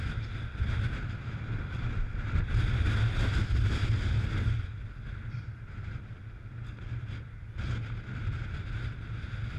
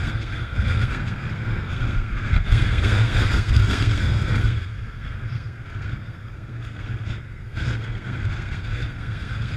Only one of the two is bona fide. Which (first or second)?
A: first